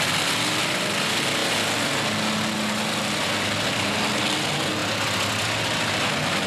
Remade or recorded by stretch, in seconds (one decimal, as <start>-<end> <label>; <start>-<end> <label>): 0.0-6.5 recorded